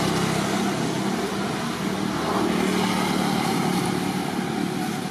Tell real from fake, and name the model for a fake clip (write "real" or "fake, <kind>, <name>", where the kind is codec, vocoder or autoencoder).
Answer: real